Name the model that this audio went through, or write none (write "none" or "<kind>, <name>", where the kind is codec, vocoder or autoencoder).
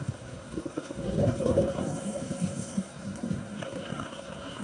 codec, SNAC